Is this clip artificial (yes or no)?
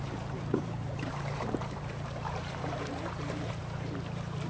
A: yes